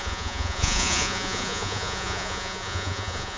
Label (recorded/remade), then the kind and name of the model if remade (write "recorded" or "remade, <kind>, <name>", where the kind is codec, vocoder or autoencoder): remade, vocoder, Vocos